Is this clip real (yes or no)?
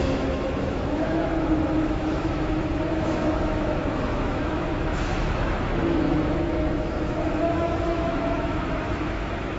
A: no